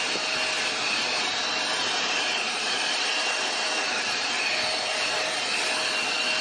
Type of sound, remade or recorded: remade